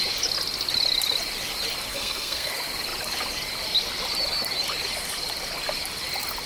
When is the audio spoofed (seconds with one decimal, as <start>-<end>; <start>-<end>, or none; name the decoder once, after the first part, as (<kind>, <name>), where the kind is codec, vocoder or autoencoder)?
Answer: 1.9-2.5 (codec, SNAC)